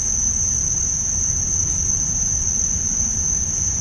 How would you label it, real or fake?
fake